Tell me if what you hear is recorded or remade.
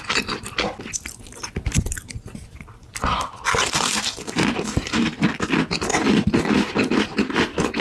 recorded